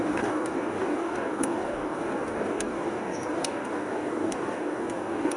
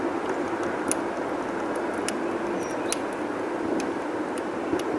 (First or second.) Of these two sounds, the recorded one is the second